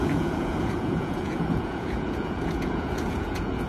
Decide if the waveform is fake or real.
fake